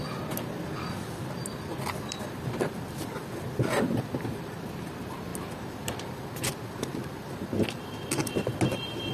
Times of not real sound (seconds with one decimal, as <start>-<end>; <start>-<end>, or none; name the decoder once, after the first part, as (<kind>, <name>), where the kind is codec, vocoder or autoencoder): none